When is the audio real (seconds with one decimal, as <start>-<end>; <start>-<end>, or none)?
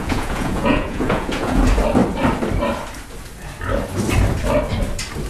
1.6-5.3